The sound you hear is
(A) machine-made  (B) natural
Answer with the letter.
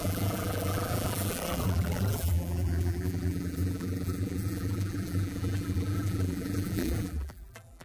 A